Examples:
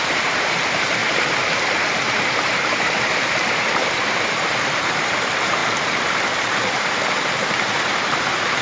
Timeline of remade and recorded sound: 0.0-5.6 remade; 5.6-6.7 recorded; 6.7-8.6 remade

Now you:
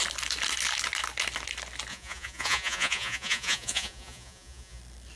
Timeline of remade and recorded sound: 0.0-1.9 recorded; 1.9-4.8 remade; 4.8-5.2 recorded